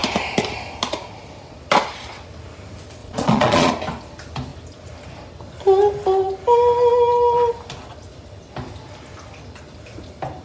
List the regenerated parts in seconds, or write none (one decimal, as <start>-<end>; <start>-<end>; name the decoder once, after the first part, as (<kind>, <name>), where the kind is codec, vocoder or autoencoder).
3.0-3.7 (vocoder, Vocos)